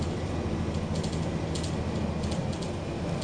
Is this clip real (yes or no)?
yes